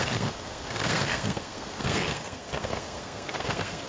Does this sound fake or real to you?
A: fake